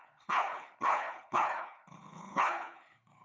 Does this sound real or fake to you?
fake